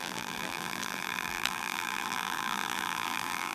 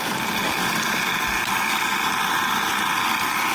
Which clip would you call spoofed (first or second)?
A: first